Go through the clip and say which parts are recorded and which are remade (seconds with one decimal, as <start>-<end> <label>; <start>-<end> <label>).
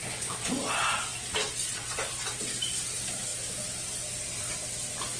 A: 0.0-0.5 remade; 0.5-5.2 recorded